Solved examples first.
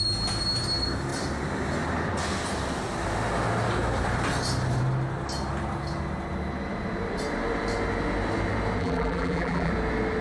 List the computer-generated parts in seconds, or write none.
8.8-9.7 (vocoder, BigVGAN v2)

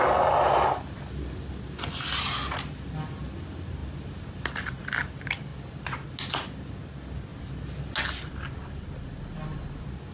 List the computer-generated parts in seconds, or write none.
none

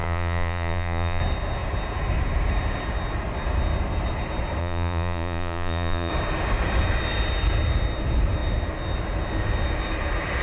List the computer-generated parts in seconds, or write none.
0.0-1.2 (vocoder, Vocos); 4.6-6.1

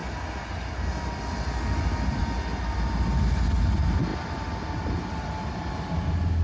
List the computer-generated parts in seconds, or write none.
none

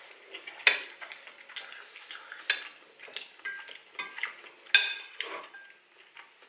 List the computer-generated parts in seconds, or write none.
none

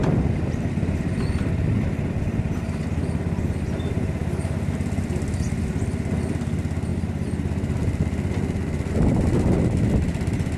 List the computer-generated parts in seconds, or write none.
none

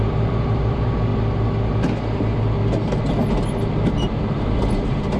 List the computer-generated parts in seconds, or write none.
0.0-1.1 (vocoder, BigVGAN v2); 4.2-5.2